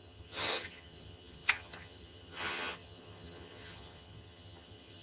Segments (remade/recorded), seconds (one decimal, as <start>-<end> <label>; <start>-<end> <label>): 0.0-5.0 remade